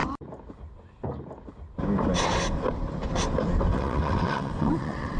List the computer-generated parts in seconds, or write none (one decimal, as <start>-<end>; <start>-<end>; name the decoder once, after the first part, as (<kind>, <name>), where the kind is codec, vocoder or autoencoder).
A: 3.7-5.2 (vocoder, WaveNeXt)